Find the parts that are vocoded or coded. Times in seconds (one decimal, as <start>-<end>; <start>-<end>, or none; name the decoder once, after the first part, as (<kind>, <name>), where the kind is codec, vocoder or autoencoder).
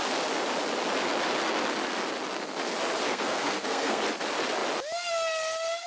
3.1-4.0 (codec, SNAC)